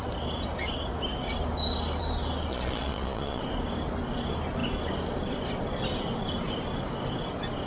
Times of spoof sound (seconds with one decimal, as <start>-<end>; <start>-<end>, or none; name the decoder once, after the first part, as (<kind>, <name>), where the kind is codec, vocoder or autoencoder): 2.5-3.4 (vocoder, Vocos)